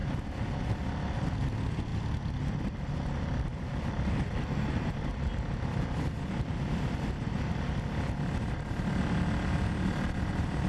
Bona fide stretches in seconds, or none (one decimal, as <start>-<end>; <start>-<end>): 0.0-10.7